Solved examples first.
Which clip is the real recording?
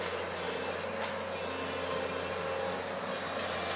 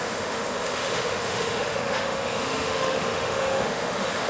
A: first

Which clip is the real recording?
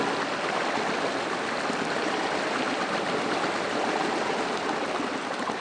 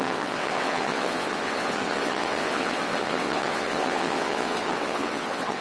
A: first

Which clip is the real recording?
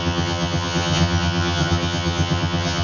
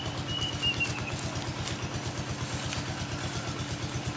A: second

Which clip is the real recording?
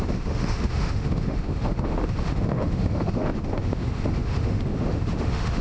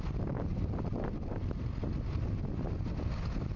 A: second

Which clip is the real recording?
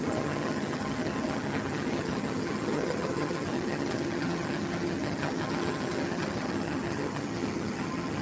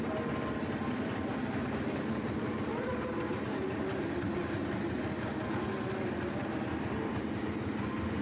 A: second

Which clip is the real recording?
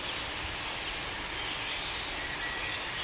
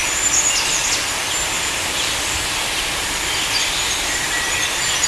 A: first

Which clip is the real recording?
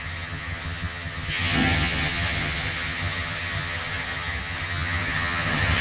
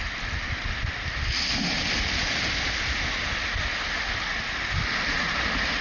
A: second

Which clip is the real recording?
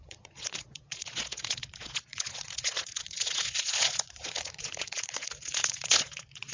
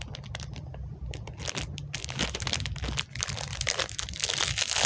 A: second